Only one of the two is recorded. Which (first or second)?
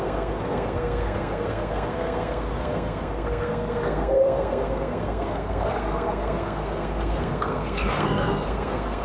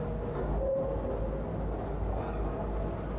second